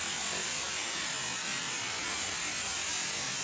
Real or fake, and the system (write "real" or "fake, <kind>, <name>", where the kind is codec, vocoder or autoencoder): real